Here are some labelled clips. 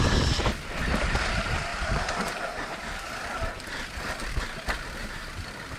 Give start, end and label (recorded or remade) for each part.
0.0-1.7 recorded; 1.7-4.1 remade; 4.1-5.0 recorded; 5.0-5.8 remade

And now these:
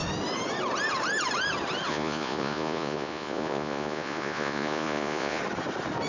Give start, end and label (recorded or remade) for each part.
0.0-1.9 recorded; 1.9-5.4 remade; 5.4-6.1 recorded

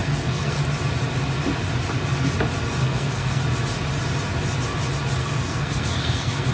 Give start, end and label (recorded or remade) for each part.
0.0-0.6 remade; 0.6-2.8 recorded; 2.8-3.4 remade; 3.4-5.2 recorded; 5.2-6.5 remade

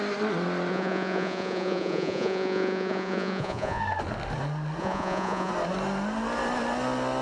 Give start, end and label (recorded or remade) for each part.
0.0-0.7 recorded; 0.7-3.8 remade; 3.8-4.8 recorded; 4.8-5.5 remade; 5.5-7.2 recorded

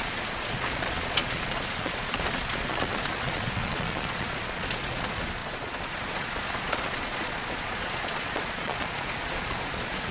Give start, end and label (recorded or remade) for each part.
0.0-10.1 remade

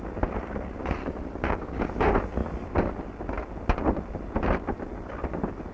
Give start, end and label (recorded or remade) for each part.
0.0-1.0 recorded; 1.0-1.9 remade; 1.9-5.7 recorded